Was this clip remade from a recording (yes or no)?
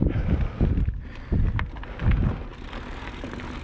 no